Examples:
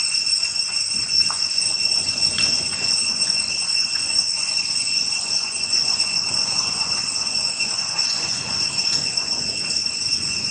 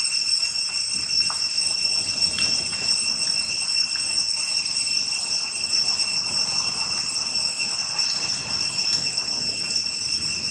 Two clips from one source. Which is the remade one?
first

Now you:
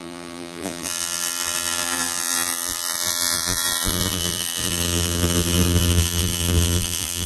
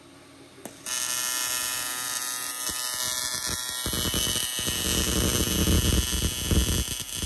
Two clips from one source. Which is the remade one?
first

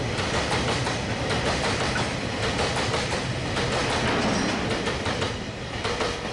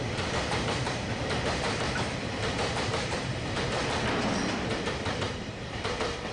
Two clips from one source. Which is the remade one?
second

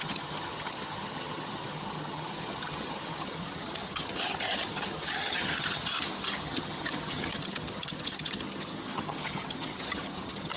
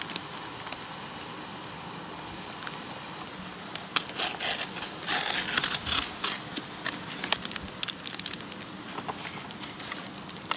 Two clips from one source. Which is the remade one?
first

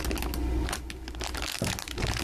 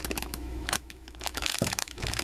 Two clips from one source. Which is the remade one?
second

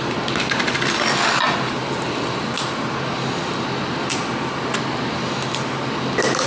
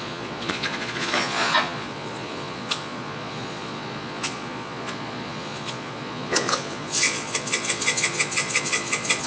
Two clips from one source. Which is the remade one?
second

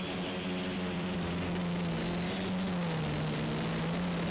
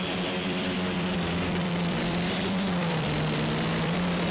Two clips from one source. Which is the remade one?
second